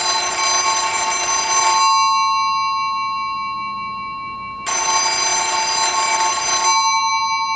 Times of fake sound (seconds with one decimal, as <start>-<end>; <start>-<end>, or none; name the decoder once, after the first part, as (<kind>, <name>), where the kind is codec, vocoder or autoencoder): none